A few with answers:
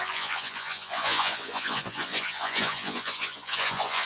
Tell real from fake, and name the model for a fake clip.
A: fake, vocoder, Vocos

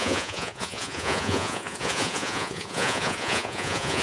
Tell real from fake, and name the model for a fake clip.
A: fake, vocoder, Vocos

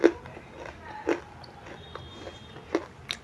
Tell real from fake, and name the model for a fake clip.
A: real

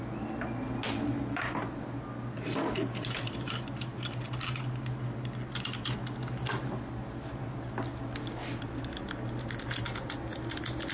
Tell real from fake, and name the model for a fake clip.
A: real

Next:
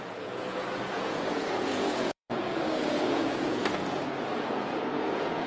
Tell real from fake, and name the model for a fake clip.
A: fake, vocoder, Vocos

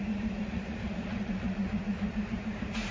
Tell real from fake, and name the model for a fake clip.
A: fake, vocoder, Vocos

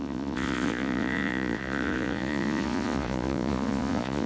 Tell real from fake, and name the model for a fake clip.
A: fake, vocoder, Vocos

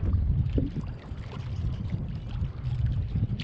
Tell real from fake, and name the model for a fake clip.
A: real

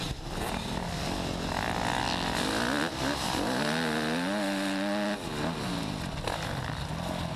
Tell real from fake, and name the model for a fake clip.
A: real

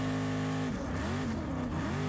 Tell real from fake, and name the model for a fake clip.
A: real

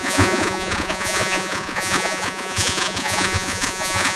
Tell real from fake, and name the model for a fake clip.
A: fake, vocoder, Vocos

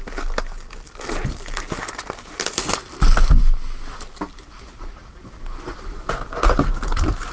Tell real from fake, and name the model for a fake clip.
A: real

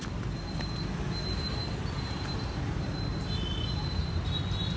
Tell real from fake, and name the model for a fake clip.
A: real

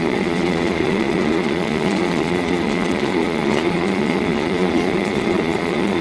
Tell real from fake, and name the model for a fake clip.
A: fake, vocoder, Vocos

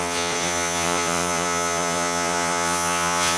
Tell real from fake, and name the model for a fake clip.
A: fake, vocoder, Vocos